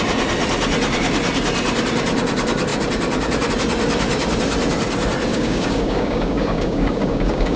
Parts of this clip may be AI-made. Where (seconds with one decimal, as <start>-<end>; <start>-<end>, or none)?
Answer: 5.3-7.6